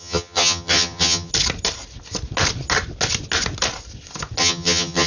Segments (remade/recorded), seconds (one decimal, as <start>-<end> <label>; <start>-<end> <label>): 0.0-1.3 remade; 1.3-4.4 recorded; 4.4-5.1 remade

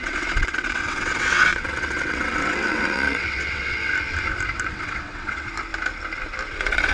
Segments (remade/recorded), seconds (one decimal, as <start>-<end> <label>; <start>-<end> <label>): 0.0-3.9 remade; 3.9-4.7 recorded; 4.7-5.5 remade; 5.5-6.5 recorded; 6.5-6.9 remade